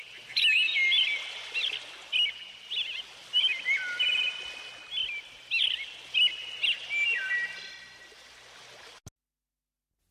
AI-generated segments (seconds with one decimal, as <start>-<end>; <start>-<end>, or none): none